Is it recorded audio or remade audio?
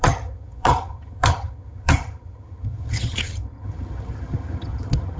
remade